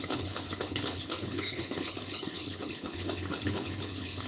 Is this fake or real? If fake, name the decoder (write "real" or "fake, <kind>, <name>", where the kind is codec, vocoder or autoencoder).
fake, codec, HILCodec